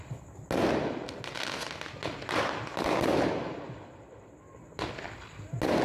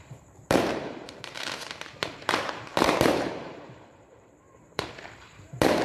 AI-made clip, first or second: second